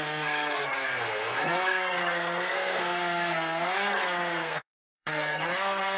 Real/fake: fake